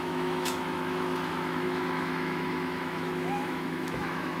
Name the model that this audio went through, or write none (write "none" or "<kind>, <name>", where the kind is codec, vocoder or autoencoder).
autoencoder, DAC-VAE